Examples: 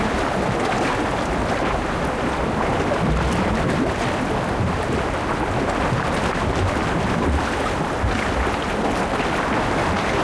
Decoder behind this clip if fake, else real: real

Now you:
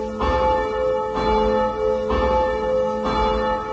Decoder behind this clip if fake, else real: real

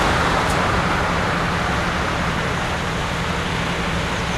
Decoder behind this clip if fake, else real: real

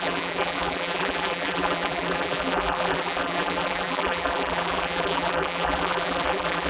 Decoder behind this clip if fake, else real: fake, vocoder, BigVGAN v2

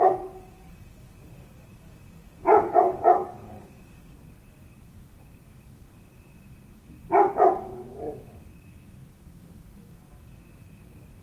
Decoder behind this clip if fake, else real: fake, codec, DAC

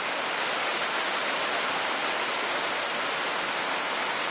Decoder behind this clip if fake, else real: real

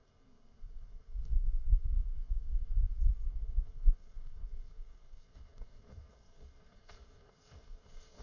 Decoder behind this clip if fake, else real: fake, codec, SNAC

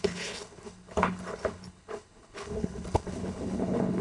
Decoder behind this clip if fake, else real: fake, codec, HILCodec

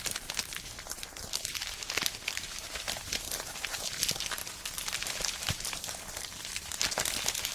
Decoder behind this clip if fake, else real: real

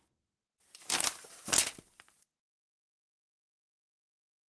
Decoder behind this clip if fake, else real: real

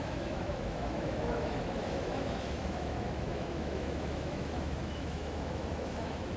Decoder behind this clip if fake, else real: fake, autoencoder, DAC-VAE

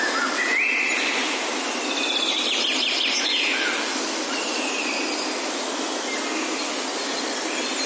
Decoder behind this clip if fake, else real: real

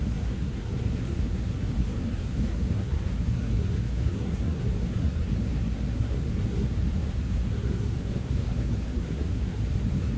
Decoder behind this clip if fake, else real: fake, codec, SNAC